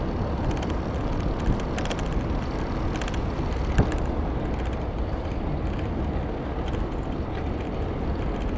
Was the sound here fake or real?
real